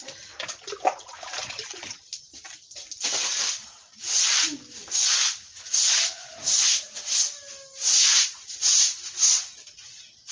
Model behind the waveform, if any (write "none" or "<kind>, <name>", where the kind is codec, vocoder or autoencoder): none